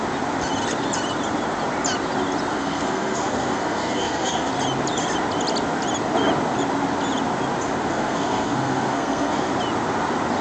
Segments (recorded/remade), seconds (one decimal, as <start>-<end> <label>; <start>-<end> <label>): 0.0-2.5 recorded; 2.5-4.5 remade; 4.5-7.9 recorded; 7.9-9.5 remade; 9.5-10.4 recorded